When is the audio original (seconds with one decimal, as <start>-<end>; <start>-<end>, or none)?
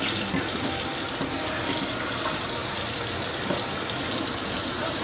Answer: 0.0-5.0